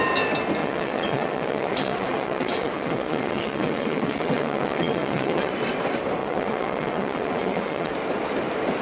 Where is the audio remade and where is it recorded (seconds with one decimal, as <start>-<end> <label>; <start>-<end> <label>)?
0.0-0.6 recorded; 0.6-5.5 remade; 5.5-6.2 recorded; 6.2-7.9 remade; 7.9-8.8 recorded